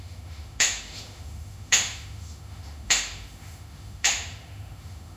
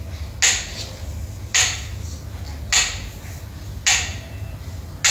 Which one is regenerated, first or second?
first